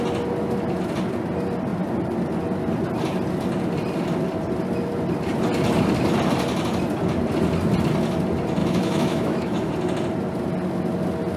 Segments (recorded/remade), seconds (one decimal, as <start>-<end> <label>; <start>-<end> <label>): 0.0-8.6 recorded; 8.6-9.7 remade; 9.7-11.4 recorded